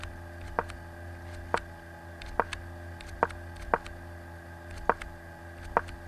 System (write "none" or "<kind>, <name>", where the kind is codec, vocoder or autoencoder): none